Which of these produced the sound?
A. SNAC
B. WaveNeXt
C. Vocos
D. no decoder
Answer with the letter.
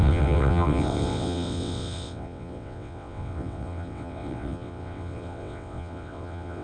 B